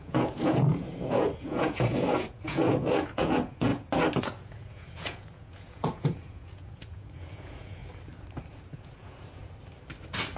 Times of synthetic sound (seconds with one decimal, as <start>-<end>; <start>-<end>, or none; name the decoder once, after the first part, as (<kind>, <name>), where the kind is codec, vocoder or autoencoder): 0.0-3.7 (vocoder, Vocos); 4.2-7.8; 8.4-9.4